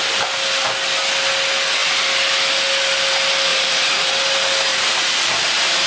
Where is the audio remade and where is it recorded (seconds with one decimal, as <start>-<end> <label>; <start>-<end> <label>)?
0.0-3.5 recorded; 3.5-4.1 remade; 4.1-4.7 recorded; 4.7-5.9 remade